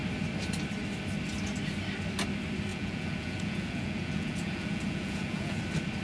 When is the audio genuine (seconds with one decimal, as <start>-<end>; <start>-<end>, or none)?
0.0-2.7; 5.6-6.0